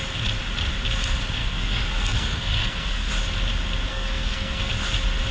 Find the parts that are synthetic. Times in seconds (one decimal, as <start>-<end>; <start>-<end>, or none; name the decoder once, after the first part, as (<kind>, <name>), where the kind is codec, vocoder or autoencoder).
1.4-3.1 (codec, SNAC); 3.9-4.7